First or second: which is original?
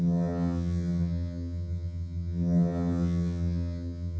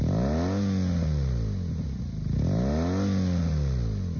second